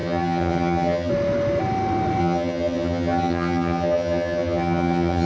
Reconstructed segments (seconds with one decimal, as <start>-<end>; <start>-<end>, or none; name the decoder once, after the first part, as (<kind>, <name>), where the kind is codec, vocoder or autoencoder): 0.0-1.1 (vocoder, HiFi-GAN); 2.2-5.3